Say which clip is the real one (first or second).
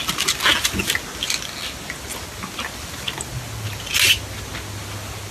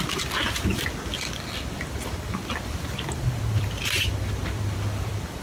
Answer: first